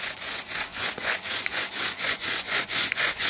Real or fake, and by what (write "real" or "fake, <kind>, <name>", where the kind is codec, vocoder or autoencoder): fake, vocoder, Vocos